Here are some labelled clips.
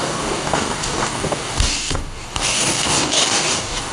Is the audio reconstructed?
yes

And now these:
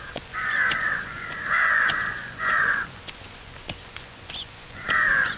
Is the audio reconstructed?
yes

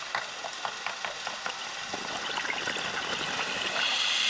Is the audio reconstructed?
no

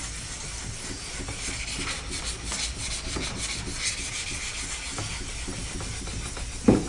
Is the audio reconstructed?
no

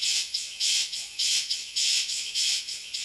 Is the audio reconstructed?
yes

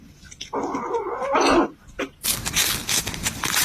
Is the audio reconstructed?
no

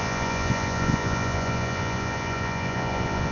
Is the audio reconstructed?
yes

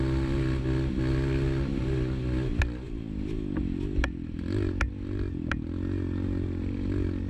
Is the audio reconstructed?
no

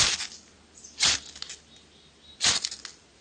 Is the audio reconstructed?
no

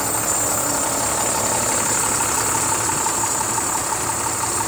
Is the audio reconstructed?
no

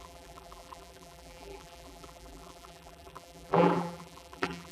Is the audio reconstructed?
yes